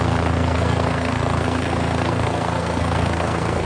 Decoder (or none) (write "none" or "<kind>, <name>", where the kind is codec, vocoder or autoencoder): codec, SNAC